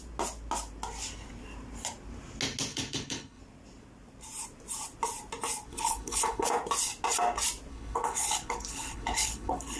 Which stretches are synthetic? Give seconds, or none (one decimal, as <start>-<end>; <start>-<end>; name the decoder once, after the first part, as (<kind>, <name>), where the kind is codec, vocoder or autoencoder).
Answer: 2.7-3.4 (codec, HILCodec); 5.7-6.5; 7.7-9.8